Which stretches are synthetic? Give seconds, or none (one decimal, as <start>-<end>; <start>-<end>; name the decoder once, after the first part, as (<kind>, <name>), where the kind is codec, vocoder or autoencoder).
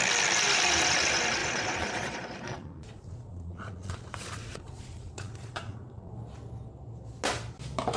1.4-6.1 (vocoder, Vocos)